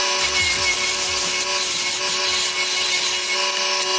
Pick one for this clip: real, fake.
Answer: real